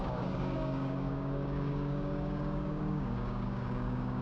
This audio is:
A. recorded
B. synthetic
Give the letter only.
B